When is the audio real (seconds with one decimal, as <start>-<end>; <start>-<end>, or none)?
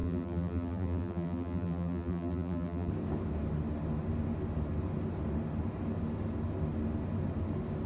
2.9-7.9